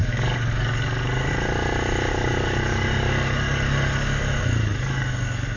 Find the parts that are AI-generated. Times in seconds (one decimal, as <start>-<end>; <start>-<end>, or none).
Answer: 0.0-1.3; 2.1-5.6